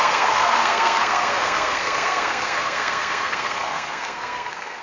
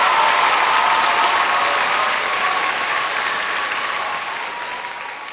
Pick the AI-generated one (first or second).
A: first